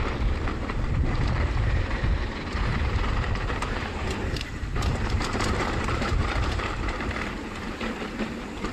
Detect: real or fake fake